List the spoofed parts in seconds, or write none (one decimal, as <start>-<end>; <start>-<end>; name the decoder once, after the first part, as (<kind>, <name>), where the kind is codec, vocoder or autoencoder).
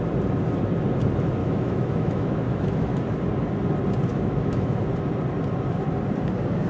1.4-3.0 (autoencoder, DAC-VAE); 4.1-4.8